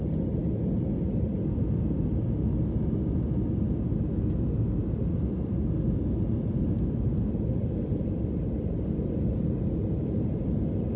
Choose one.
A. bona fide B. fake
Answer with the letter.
A